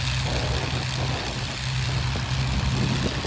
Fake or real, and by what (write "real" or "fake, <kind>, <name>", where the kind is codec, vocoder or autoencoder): real